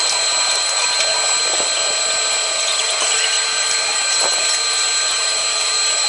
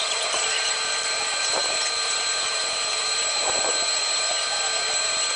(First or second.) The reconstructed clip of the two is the second